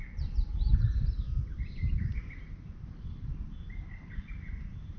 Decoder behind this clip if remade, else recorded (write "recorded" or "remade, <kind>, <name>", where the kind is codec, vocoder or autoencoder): remade, vocoder, BigVGAN v2